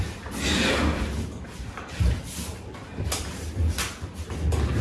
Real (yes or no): yes